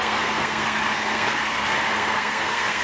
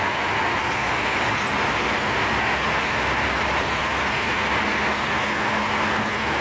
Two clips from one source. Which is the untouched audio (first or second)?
second